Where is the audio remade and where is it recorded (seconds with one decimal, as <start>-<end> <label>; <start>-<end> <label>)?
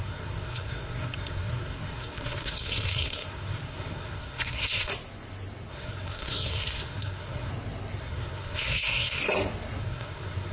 0.0-4.9 remade; 4.9-5.7 recorded; 5.7-7.5 remade; 7.5-8.0 recorded; 8.0-9.2 remade; 9.2-9.8 recorded; 9.8-10.5 remade